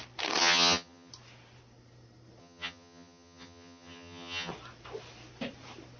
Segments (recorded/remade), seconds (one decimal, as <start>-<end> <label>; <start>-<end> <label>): 0.0-0.4 recorded; 0.4-1.1 remade; 1.1-2.4 recorded; 2.4-4.5 remade; 4.5-6.0 recorded